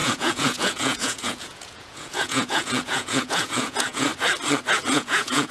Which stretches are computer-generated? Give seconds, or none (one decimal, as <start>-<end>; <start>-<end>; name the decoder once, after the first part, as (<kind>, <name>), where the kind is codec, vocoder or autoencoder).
0.0-4.1 (vocoder, Vocos); 4.7-5.5